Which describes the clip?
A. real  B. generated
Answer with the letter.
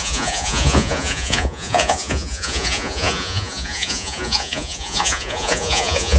B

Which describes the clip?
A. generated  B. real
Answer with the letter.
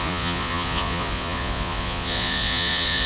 A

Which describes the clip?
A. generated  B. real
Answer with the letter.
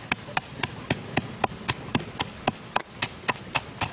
B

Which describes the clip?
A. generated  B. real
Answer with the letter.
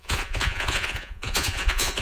A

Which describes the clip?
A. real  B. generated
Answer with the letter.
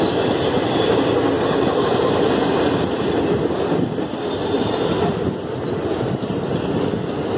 A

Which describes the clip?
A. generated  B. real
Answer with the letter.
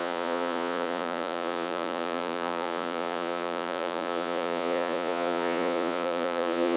A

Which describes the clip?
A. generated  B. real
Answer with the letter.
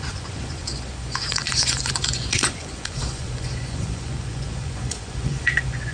A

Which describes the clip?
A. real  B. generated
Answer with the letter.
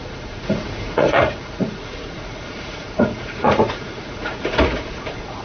B